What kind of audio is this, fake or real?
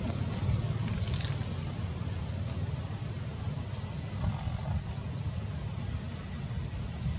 real